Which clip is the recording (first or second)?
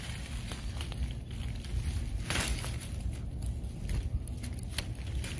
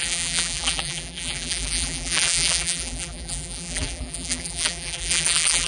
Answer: first